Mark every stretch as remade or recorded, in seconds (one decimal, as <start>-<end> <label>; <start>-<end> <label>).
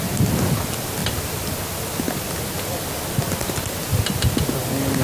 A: 0.0-5.0 recorded